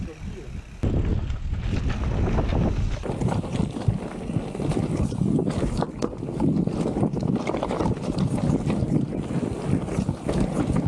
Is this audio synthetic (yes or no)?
no